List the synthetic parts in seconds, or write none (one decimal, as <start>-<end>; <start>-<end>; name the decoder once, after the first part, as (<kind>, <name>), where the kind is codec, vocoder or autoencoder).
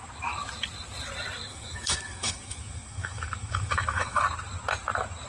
1.5-4.2 (autoencoder, DAC-VAE)